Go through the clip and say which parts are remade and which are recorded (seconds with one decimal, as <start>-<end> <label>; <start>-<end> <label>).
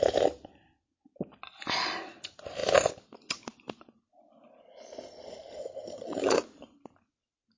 0.0-5.6 recorded; 5.6-6.4 remade; 6.4-7.6 recorded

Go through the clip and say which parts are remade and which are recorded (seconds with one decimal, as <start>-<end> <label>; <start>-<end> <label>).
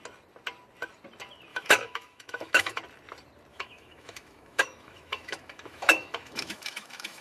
0.0-1.5 recorded; 1.5-2.8 remade; 2.8-3.5 recorded; 3.5-7.2 remade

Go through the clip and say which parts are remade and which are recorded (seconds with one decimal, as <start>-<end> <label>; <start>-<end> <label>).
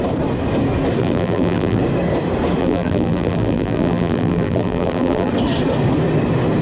0.0-1.0 recorded; 1.0-1.8 remade; 1.8-2.6 recorded; 2.6-5.3 remade; 5.3-6.6 recorded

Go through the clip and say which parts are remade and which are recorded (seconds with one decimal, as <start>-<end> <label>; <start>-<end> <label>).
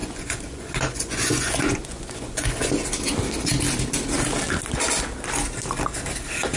0.0-2.7 remade; 2.7-6.6 recorded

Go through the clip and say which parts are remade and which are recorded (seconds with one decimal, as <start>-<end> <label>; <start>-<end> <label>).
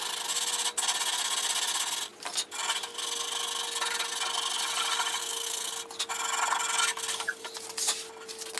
0.0-5.2 recorded; 5.2-5.7 remade; 5.7-8.6 recorded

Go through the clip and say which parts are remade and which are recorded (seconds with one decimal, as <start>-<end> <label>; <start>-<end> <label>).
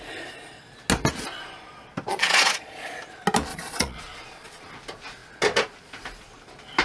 0.0-2.1 recorded; 2.1-3.0 remade; 3.0-3.5 recorded; 3.5-4.7 remade; 4.7-6.8 recorded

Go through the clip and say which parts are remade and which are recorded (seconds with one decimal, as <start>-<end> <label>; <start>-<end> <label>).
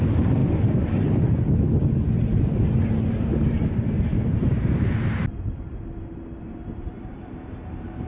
0.0-0.4 remade; 0.4-3.1 recorded; 3.1-4.8 remade; 4.8-6.4 recorded; 6.4-8.1 remade